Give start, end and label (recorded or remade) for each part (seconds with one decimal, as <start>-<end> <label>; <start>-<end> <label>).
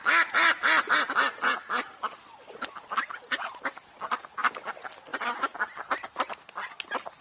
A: 0.0-7.2 recorded